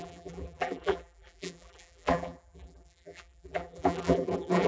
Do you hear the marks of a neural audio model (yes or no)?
yes